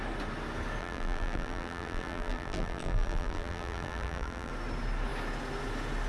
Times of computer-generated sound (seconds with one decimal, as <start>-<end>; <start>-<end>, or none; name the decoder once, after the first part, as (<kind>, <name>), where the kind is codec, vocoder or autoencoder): 0.8-4.5 (vocoder, BigVGAN v2)